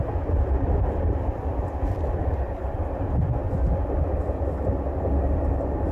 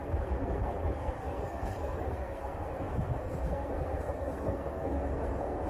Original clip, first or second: first